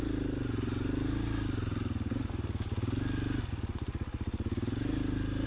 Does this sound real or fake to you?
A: real